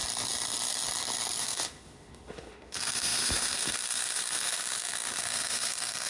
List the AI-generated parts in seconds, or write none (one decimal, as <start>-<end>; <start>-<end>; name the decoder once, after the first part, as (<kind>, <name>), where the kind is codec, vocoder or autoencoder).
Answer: 1.4-6.1 (autoencoder, DAC-VAE)